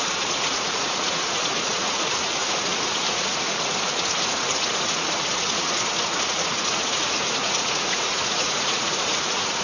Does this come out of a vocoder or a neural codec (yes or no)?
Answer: yes